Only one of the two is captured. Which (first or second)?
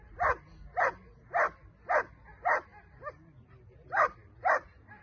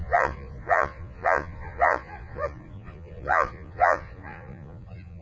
first